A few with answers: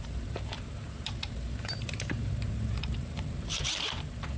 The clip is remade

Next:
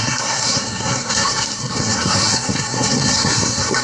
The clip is remade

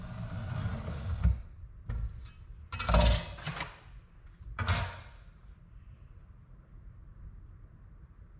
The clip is recorded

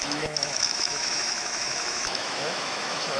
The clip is remade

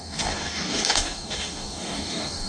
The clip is remade